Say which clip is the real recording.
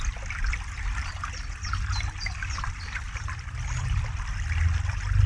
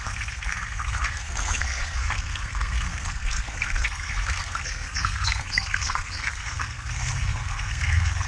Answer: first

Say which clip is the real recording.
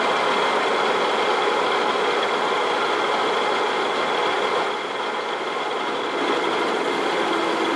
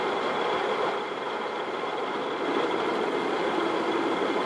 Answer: first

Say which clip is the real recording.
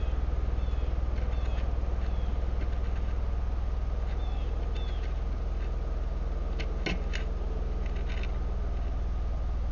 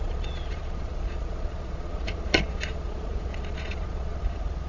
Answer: first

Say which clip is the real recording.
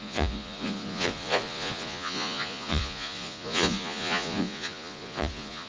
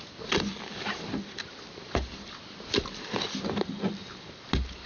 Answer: second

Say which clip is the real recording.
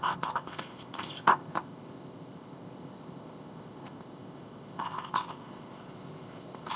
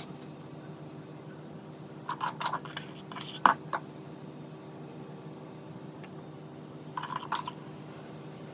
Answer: second